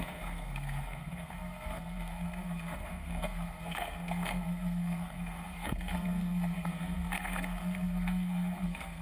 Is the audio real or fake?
fake